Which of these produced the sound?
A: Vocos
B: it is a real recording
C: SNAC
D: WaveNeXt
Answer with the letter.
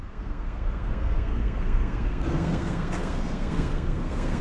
C